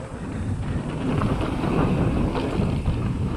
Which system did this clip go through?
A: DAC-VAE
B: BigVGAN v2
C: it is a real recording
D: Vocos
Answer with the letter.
C